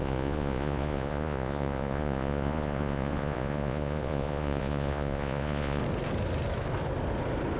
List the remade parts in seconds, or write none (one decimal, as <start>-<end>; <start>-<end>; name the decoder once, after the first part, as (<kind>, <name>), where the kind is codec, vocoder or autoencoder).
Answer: 0.0-5.8 (vocoder, Vocos)